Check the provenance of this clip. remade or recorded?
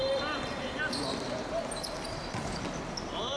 recorded